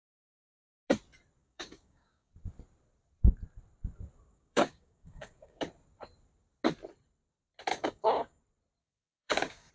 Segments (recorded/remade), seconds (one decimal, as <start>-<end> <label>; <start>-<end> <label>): 0.0-1.4 recorded; 1.4-2.3 remade; 2.3-4.3 recorded; 4.3-5.6 remade; 5.6-7.7 recorded; 7.7-8.4 remade; 8.4-8.8 recorded; 8.8-9.7 remade